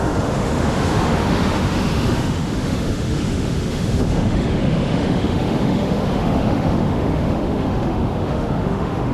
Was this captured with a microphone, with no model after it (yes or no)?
no